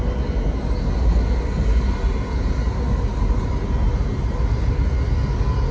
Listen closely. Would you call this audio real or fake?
real